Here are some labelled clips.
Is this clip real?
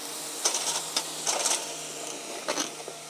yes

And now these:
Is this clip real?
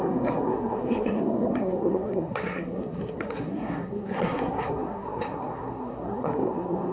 no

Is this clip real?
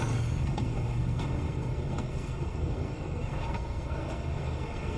no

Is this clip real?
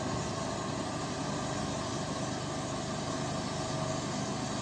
yes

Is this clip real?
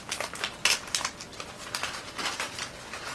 yes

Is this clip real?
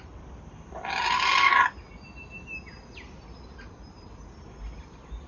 yes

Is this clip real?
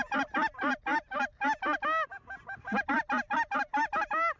yes